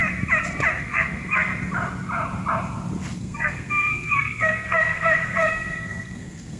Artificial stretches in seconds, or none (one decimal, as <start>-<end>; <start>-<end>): 0.7-1.5; 3.2-6.6